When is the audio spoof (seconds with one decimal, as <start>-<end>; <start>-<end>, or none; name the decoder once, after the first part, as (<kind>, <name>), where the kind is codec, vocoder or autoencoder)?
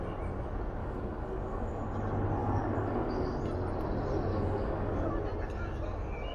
0.8-1.8 (codec, DAC); 2.4-3.4; 4.3-5.1